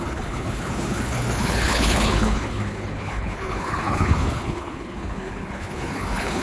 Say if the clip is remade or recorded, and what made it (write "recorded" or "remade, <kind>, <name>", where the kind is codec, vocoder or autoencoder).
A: remade, codec, HILCodec